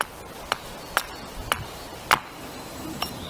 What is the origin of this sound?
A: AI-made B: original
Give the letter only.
B